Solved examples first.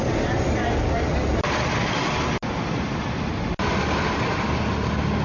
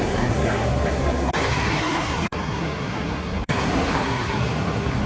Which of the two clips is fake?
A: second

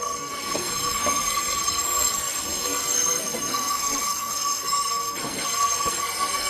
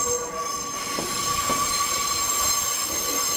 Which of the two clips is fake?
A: first